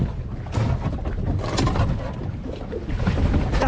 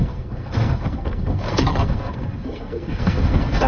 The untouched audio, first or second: first